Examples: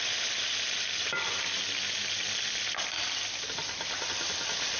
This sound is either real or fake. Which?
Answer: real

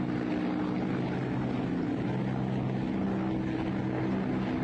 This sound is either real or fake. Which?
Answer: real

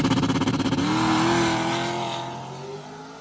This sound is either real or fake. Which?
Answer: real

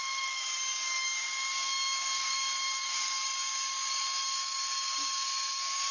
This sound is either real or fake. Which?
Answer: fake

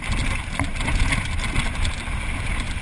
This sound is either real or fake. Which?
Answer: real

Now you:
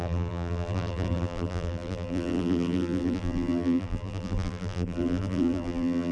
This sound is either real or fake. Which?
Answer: fake